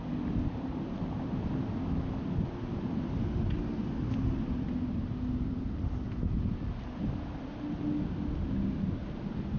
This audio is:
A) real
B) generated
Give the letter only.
A